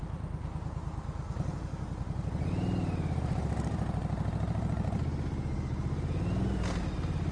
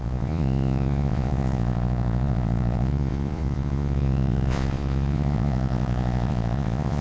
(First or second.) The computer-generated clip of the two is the second